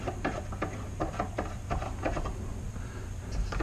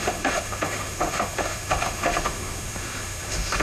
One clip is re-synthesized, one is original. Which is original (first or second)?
first